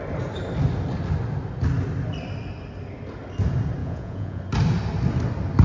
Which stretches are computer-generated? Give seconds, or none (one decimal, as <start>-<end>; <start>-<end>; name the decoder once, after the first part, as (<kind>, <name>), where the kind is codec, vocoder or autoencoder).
3.8-4.4 (vocoder, Vocos)